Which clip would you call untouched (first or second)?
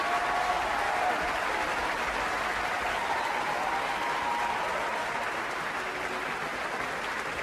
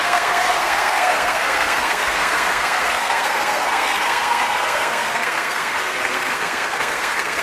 first